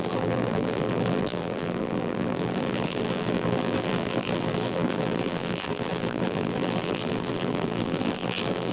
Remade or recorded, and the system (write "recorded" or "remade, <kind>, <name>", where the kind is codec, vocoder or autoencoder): remade, vocoder, BigVGAN v2